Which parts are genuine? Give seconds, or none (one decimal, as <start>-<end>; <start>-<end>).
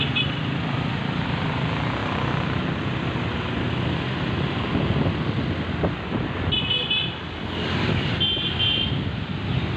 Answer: 0.0-2.0; 2.6-9.8